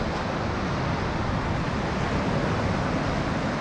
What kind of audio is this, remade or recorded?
recorded